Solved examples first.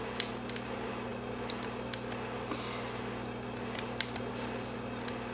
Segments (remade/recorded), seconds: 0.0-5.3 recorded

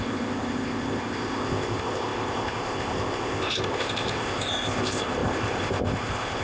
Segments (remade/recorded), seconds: 0.0-6.4 remade

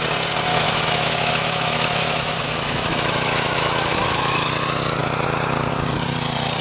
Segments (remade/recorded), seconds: 0.0-0.5 recorded; 0.5-4.5 remade; 4.5-6.6 recorded